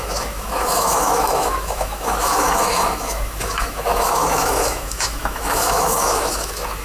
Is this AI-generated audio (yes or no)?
yes